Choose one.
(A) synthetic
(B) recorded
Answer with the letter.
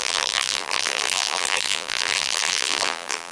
A